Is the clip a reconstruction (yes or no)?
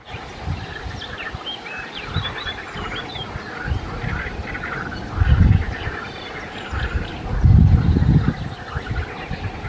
no